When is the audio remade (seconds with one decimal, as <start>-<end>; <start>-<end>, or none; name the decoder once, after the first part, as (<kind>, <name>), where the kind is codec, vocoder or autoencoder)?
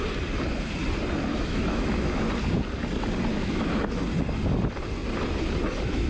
1.3-2.2 (autoencoder, DAC-VAE); 3.3-4.0